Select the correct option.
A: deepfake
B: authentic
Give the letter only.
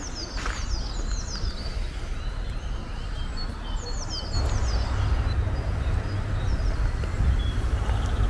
B